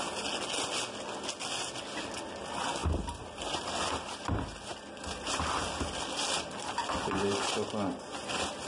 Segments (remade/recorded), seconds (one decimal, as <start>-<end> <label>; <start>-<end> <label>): 0.0-8.7 recorded